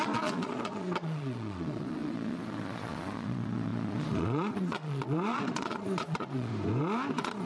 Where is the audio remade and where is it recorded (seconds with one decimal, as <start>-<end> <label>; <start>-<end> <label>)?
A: 0.0-6.5 remade; 6.5-7.1 recorded; 7.1-7.5 remade